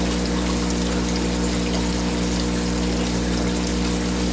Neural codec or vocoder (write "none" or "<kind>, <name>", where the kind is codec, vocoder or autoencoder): none